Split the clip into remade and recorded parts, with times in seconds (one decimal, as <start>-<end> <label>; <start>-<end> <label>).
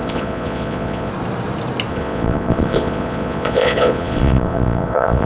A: 0.0-1.1 remade; 1.1-1.9 recorded; 1.9-5.3 remade